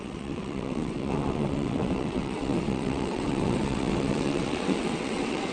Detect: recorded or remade remade